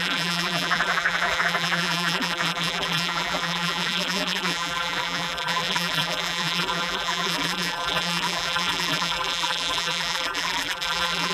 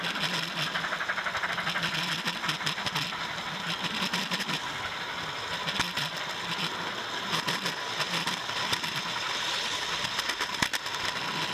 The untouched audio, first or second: second